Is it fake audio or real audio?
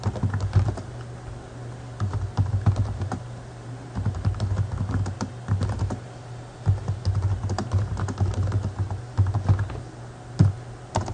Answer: real